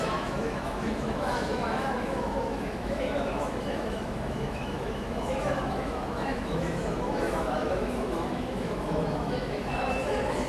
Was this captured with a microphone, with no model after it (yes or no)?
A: no